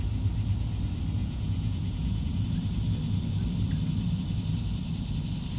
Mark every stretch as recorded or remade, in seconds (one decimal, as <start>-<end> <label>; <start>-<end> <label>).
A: 0.0-1.2 recorded; 1.2-2.3 remade; 2.3-5.6 recorded